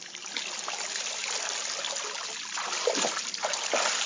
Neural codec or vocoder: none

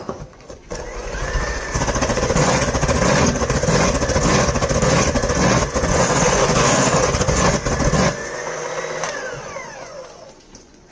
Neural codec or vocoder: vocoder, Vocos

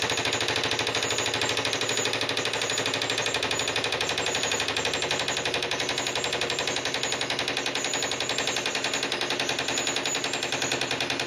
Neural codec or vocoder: none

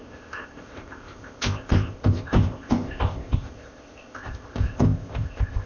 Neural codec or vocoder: codec, ZipCodec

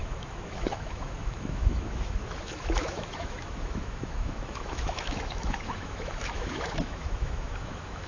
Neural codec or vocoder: autoencoder, DAC-VAE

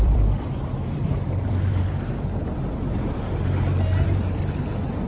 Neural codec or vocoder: vocoder, BigVGAN v2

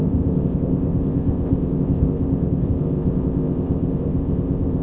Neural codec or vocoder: codec, ZipCodec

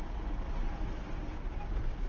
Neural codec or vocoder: none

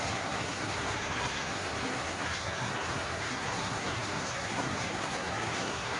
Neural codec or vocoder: codec, SNAC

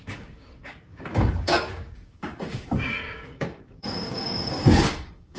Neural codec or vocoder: codec, DAC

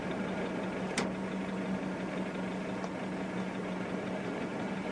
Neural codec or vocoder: none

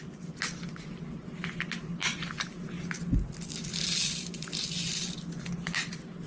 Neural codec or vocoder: none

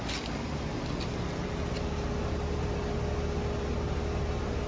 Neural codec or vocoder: none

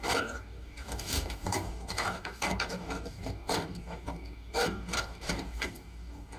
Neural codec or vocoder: codec, DAC